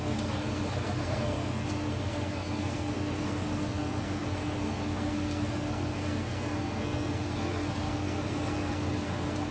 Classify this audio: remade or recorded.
remade